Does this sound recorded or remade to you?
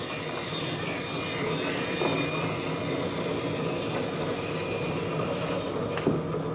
recorded